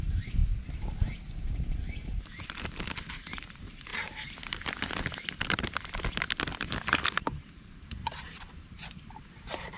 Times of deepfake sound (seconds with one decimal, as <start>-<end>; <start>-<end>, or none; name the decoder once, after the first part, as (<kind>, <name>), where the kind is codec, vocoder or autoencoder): 0.0-0.4 (vocoder, BigVGAN v2); 3.1-3.9; 7.4-9.8